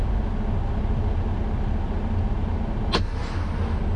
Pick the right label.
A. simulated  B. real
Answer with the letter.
B